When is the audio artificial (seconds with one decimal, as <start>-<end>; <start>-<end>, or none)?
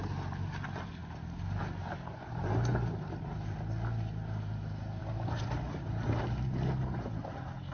1.0-1.6; 5.0-7.0